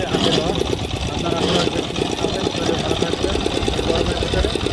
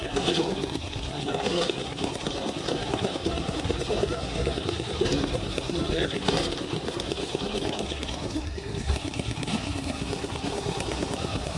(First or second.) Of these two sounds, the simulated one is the second